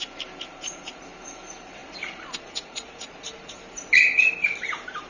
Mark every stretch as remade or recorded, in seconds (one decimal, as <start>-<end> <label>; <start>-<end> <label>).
0.0-0.5 recorded; 0.5-1.0 remade; 1.0-1.8 recorded; 1.8-3.5 remade; 3.5-5.1 recorded